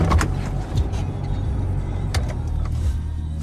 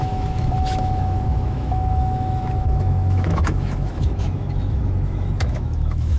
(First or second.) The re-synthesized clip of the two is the second